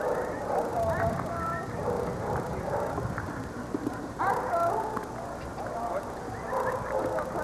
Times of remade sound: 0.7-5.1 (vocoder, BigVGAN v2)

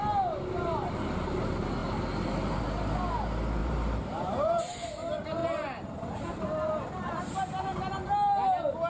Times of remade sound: 3.6-4.9 (vocoder, BigVGAN v2); 5.4-7.0

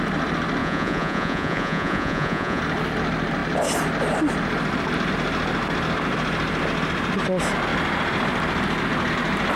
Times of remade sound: 0.6-2.6 (vocoder, Vocos)

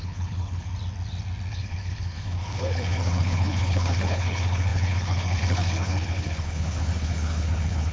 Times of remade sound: 0.0-0.7 (codec, HILCodec); 1.5-7.9